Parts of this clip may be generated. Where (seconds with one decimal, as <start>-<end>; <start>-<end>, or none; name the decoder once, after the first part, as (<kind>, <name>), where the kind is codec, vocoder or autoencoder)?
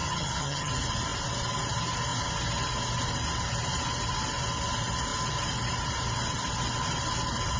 0.0-0.7 (vocoder, HiFi-GAN)